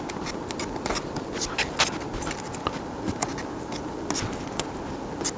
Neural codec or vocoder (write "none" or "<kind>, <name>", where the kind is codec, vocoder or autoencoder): none